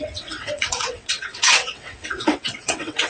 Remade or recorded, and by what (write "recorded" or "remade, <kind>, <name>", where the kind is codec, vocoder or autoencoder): remade, vocoder, WaveNeXt